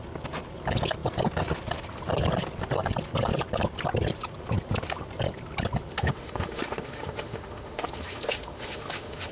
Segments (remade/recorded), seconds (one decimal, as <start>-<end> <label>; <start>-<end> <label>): 0.0-5.9 recorded; 5.9-9.3 remade